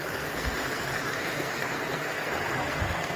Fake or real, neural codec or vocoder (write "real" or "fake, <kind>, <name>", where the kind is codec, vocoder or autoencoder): fake, codec, SNAC